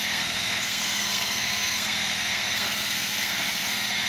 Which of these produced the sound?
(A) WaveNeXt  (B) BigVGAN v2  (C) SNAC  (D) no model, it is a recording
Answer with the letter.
C